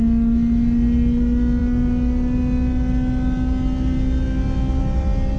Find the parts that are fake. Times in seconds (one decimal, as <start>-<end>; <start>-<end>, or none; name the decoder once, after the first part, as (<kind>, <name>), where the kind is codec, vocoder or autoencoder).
none